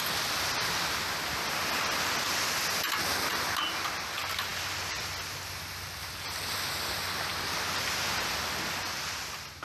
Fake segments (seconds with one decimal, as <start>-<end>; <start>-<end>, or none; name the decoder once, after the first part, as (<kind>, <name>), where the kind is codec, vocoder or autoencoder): none